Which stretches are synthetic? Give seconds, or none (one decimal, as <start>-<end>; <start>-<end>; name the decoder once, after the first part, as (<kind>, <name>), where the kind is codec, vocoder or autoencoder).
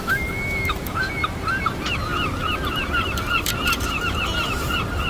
0.0-1.1 (autoencoder, DAC-VAE)